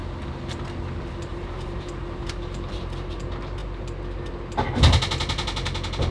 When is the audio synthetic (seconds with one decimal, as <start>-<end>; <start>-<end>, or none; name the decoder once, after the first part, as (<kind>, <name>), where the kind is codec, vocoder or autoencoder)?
1.3-3.2 (vocoder, BigVGAN v2)